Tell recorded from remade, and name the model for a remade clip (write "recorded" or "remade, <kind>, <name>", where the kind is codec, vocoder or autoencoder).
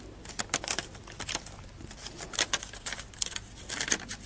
recorded